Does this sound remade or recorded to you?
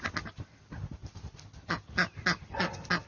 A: recorded